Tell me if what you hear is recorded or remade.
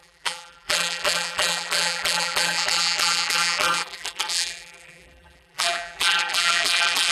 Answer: remade